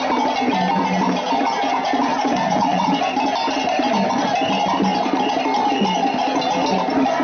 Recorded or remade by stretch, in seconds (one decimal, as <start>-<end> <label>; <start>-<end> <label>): 0.0-2.1 recorded; 2.1-3.0 remade; 3.0-7.2 recorded